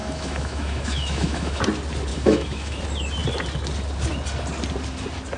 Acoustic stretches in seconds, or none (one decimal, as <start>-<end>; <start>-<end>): 1.6-2.1; 2.8-5.4